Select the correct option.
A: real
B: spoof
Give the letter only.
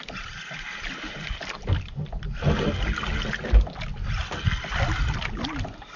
A